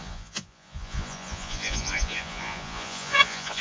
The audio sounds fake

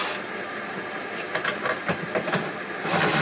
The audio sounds real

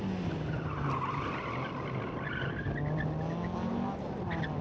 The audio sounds real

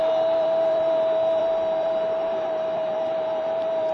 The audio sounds fake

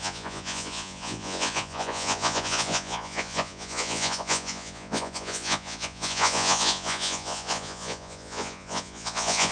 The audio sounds fake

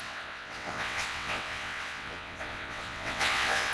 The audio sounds fake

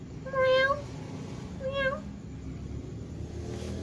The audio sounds real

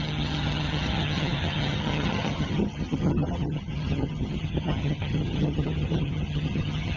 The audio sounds fake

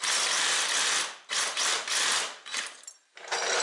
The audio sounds real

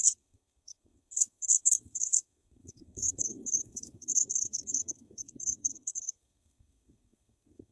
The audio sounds fake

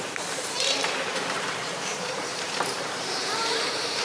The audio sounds fake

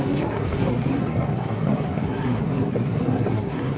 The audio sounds fake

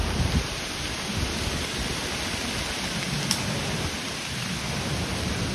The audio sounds real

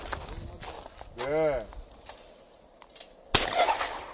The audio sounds real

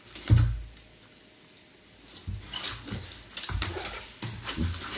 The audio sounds real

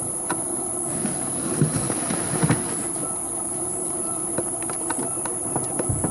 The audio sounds real